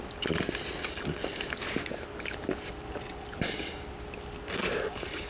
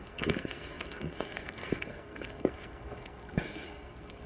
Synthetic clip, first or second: second